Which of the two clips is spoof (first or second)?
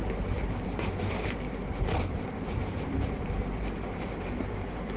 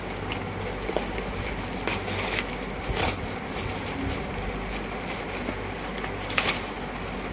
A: first